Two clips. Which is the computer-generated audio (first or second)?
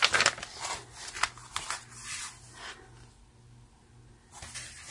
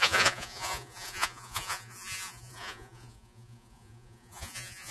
second